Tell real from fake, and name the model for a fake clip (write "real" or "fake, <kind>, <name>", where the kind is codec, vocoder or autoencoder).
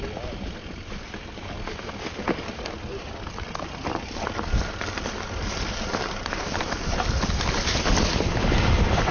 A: fake, vocoder, BigVGAN v2